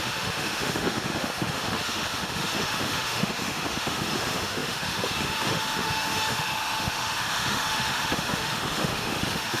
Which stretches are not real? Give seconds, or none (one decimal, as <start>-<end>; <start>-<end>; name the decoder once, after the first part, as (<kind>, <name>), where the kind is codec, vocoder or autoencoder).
0.0-9.6 (autoencoder, DAC-VAE)